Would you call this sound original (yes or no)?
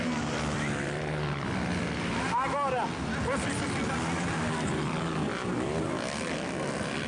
yes